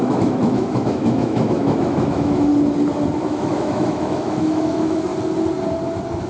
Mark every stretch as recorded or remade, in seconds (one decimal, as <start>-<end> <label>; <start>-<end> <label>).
0.0-2.5 remade; 2.5-3.1 recorded; 3.1-5.1 remade; 5.1-6.3 recorded